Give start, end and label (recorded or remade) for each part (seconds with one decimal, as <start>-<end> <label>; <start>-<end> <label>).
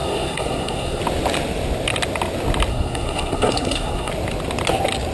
0.0-1.0 remade; 1.0-2.7 recorded; 2.7-4.1 remade; 4.1-5.1 recorded